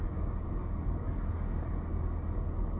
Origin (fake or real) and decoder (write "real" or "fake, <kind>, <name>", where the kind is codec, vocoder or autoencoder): fake, codec, DAC